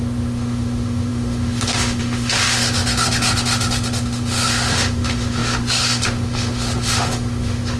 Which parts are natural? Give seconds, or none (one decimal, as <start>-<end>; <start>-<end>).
none